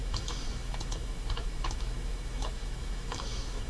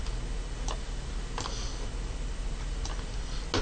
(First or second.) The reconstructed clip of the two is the first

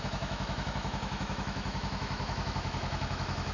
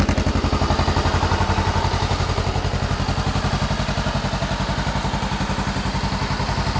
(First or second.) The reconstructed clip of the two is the first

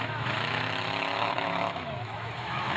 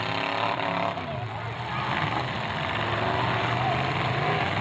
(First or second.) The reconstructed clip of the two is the first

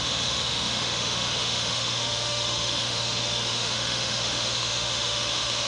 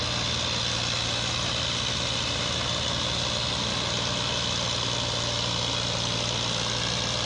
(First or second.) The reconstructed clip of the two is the first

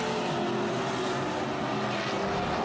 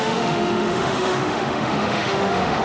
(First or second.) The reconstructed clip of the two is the second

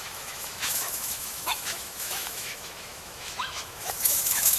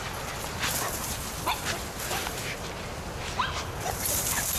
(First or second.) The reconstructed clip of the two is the first